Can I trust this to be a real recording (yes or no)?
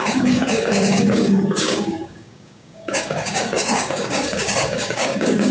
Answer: no